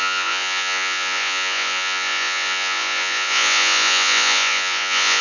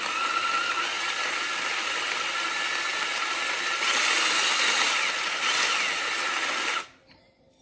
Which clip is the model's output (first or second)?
first